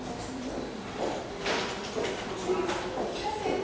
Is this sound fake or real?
real